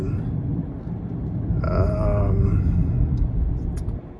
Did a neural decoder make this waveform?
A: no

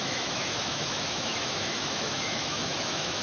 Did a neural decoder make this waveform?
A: yes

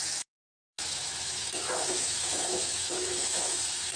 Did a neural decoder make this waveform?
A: yes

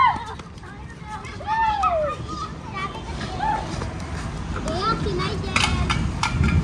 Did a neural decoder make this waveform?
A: no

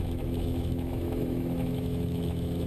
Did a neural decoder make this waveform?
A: yes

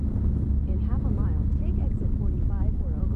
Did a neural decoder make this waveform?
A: no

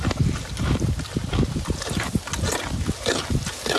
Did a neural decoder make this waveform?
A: no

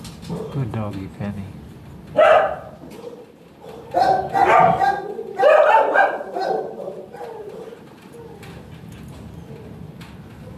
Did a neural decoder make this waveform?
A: no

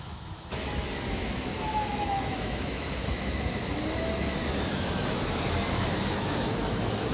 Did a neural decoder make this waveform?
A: yes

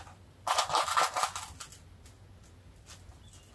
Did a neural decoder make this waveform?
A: no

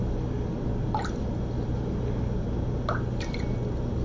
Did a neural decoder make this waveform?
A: no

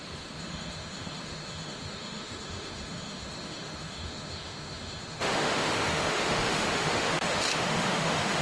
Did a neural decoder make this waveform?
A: yes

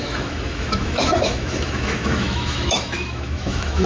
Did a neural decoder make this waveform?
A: yes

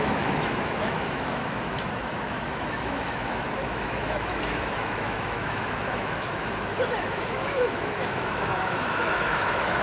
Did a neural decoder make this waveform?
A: yes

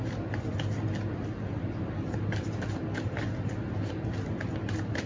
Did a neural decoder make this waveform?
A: no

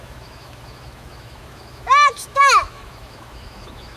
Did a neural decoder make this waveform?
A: yes